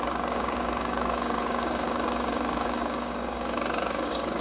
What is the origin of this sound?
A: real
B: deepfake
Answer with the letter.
B